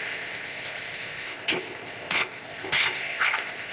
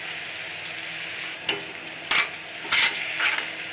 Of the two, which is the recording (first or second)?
second